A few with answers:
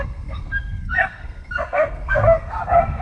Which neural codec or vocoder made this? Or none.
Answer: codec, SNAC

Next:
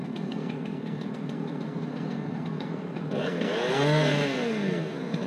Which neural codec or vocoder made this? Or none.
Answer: codec, SNAC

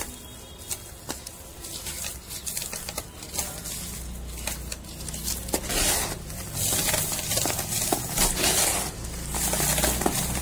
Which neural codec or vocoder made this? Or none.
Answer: none